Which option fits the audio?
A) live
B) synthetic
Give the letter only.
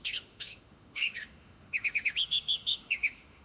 B